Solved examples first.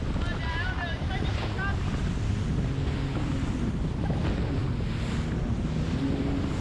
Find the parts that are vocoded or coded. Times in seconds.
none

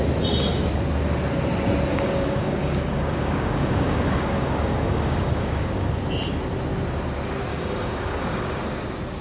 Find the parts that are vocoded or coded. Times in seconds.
1.9-5.9 (codec, DAC); 7.5-8.6